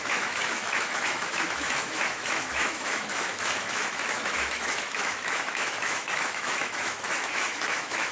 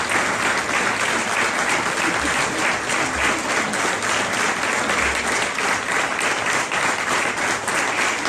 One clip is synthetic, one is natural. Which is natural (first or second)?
second